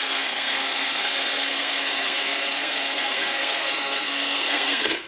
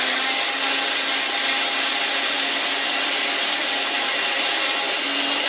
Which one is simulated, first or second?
first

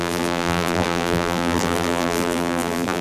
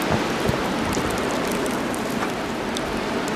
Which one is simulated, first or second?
first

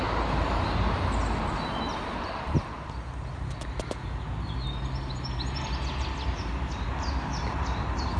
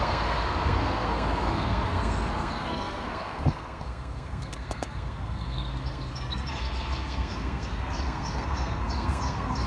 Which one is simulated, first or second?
second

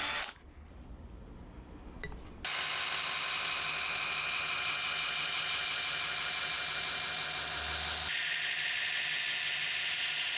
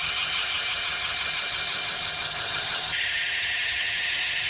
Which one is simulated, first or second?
second